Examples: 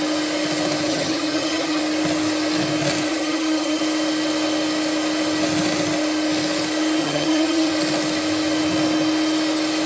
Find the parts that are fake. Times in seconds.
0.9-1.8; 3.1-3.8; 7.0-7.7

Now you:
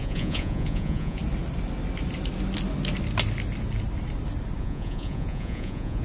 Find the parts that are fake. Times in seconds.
0.0-1.2; 4.6-6.0